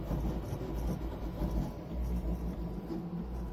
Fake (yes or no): no